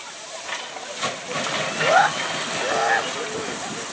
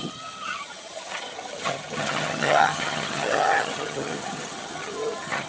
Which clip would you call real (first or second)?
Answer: first